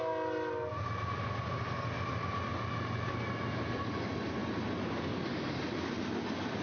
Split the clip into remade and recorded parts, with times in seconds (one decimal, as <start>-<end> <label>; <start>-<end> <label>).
0.0-6.6 recorded